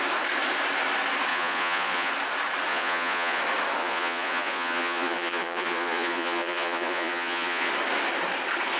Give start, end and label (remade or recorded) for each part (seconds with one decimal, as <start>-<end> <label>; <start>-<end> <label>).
0.0-1.3 recorded; 1.3-2.1 remade; 2.1-2.7 recorded; 2.7-3.4 remade; 3.4-3.8 recorded; 3.8-7.7 remade; 7.7-8.8 recorded